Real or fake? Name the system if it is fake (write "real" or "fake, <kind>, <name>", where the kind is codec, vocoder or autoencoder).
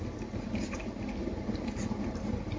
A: real